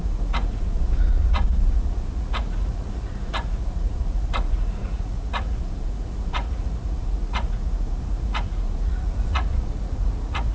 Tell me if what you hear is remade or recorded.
remade